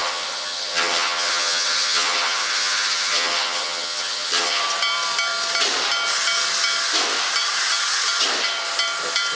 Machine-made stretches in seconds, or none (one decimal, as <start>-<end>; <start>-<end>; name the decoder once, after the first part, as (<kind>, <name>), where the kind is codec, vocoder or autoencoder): 0.0-4.6 (vocoder, HiFi-GAN)